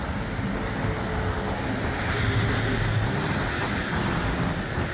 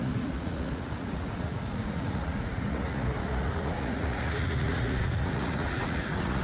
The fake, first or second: second